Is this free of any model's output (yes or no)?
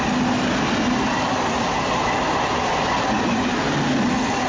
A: yes